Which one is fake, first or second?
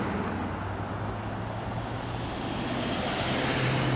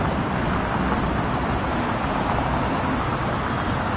second